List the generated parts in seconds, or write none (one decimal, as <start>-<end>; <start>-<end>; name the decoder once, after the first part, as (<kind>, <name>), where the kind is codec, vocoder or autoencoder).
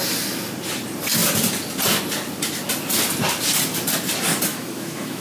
4.5-5.2 (autoencoder, DAC-VAE)